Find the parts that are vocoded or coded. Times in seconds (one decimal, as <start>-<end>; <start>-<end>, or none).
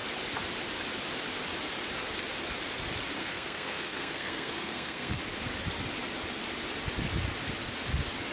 3.2-5.2